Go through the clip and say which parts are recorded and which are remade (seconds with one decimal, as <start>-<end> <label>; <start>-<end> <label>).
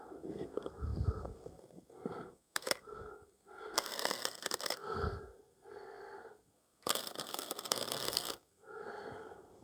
0.0-9.6 remade